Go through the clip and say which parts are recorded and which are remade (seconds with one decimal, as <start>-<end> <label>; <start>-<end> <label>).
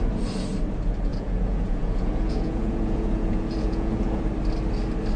0.0-1.1 recorded; 1.1-4.2 remade; 4.2-5.2 recorded